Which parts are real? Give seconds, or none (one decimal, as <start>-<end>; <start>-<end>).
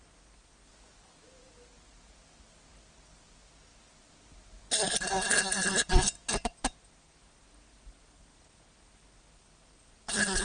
0.0-10.4